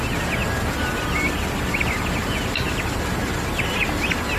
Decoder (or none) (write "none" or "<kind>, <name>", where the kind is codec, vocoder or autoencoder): none